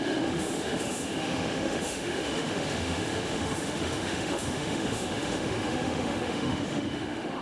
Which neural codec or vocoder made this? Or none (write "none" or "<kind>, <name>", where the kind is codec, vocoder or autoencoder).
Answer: autoencoder, DAC-VAE